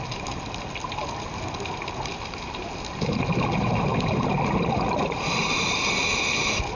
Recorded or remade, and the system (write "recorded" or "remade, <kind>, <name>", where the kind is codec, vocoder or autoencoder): recorded